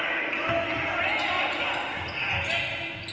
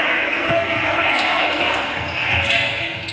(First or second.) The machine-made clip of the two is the second